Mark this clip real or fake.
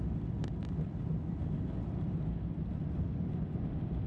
real